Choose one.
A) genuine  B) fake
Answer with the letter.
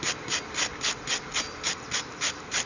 A